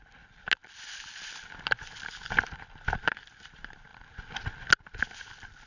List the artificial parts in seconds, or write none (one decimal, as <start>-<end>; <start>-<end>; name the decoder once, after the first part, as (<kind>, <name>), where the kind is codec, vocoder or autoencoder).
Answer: none